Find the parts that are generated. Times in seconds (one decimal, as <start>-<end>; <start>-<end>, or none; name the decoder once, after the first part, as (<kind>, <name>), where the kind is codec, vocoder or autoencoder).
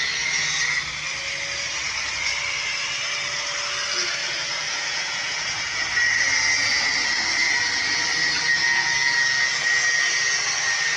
4.2-5.9 (vocoder, Vocos)